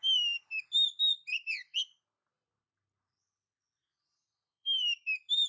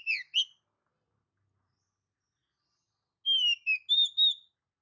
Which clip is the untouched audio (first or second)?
second